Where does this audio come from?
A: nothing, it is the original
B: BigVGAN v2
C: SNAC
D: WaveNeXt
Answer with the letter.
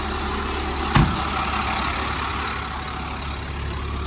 A